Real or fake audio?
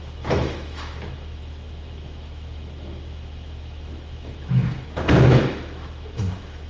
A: fake